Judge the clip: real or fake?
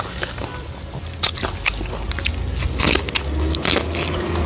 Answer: real